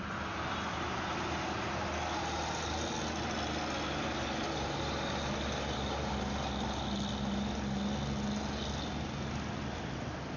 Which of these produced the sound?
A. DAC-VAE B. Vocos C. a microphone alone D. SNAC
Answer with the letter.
C